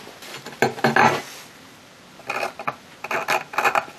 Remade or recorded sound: recorded